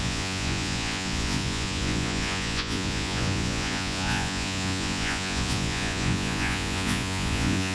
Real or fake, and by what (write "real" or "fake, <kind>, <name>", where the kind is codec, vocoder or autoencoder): fake, vocoder, Vocos